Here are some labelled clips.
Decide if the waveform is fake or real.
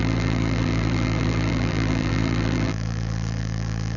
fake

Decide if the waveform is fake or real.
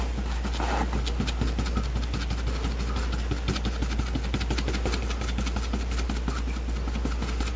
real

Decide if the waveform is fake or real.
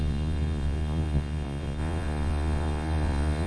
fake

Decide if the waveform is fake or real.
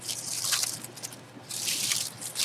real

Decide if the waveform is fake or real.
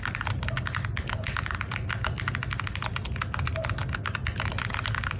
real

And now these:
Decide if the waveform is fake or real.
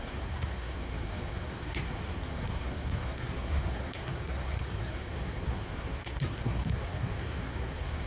fake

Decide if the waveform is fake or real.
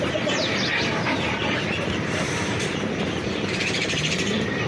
real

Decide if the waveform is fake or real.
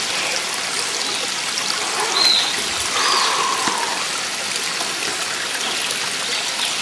real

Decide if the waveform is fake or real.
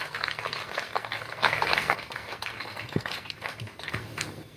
fake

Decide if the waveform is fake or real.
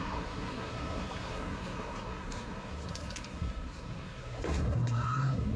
fake